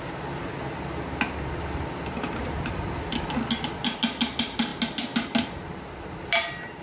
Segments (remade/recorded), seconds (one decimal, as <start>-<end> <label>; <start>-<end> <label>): 0.0-6.8 recorded